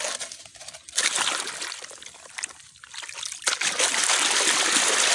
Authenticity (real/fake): real